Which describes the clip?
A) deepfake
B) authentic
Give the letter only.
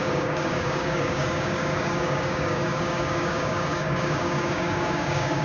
A